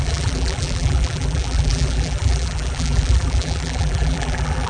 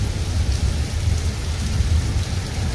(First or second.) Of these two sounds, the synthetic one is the first